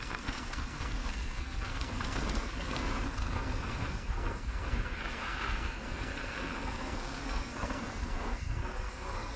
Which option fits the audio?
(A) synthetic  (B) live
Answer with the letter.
A